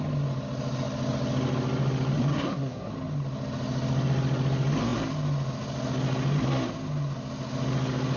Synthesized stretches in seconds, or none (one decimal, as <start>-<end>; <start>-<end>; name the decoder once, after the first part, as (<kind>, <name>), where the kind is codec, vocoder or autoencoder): 2.3-2.9 (codec, SNAC)